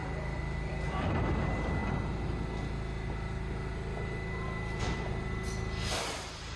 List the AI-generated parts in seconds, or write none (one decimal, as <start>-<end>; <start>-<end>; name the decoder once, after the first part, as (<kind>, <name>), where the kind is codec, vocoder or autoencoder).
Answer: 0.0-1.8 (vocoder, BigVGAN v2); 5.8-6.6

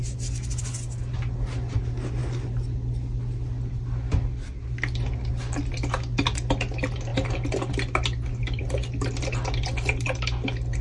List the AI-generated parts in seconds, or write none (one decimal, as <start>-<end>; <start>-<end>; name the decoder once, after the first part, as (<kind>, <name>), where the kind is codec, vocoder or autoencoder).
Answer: none

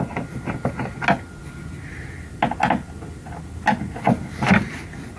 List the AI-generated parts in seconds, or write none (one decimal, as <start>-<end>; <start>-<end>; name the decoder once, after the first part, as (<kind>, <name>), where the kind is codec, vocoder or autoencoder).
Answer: none

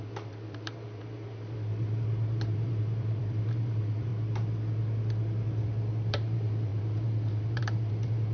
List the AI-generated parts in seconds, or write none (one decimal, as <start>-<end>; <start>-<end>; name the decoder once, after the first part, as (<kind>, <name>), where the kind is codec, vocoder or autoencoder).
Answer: 0.0-4.1 (vocoder, BigVGAN v2); 6.1-8.3

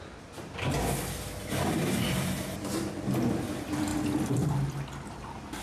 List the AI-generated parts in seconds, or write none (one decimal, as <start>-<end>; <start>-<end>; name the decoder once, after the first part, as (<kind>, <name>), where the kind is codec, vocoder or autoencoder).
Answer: none

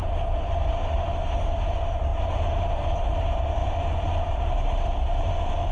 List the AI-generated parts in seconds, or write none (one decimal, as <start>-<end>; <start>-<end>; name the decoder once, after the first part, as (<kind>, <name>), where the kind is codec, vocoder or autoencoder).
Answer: none

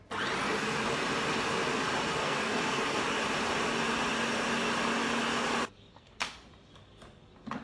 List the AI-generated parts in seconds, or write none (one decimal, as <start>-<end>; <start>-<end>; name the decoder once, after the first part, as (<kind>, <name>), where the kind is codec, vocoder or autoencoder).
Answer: 2.2-3.0 (codec, SNAC); 5.9-6.4

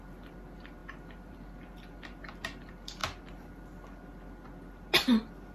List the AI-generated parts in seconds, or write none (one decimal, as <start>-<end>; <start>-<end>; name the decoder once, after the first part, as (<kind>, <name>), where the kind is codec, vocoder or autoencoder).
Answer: none